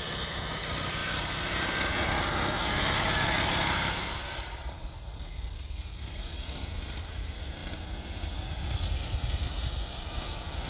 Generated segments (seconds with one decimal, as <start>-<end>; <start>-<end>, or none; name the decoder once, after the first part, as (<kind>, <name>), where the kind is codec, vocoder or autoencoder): none